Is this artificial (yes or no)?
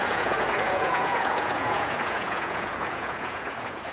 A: yes